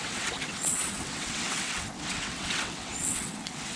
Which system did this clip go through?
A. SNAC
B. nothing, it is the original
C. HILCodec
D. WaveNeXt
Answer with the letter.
D